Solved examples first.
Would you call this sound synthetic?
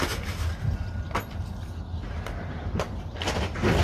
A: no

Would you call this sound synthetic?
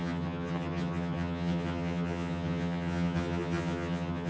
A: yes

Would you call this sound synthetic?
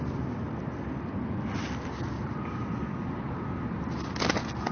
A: no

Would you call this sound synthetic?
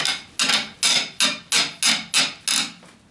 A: no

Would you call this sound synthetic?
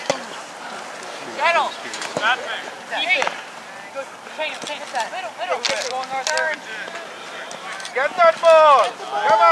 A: no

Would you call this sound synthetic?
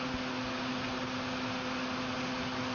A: no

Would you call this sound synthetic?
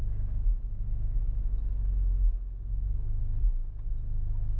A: no